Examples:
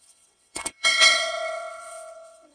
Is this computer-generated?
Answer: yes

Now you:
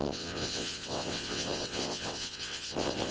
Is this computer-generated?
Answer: yes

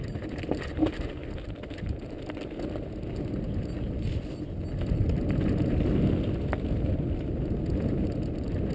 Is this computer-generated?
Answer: no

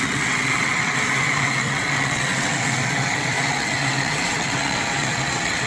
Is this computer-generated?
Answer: yes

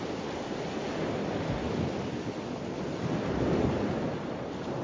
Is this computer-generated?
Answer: no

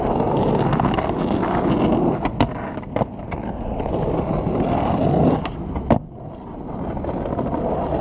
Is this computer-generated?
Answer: no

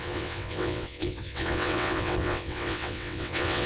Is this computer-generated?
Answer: yes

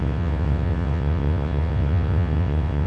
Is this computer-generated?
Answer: yes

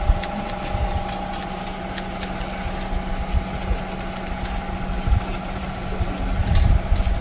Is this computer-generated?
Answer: no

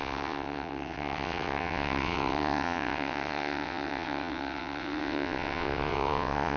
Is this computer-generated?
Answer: yes